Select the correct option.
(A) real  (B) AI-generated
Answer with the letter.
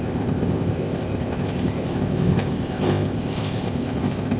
B